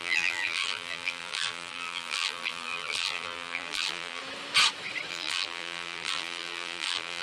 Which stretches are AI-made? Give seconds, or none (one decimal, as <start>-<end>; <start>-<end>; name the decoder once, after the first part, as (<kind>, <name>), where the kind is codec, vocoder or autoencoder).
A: 0.0-4.2 (vocoder, BigVGAN v2); 5.1-7.2